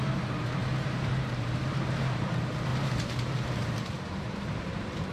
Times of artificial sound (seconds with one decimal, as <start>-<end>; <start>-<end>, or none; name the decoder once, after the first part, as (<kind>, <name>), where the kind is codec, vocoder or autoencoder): 0.0-5.1 (vocoder, BigVGAN v2)